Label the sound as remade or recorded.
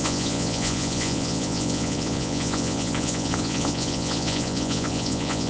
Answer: remade